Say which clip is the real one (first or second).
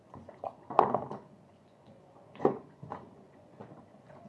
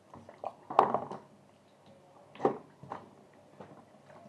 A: second